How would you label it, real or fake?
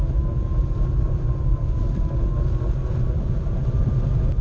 real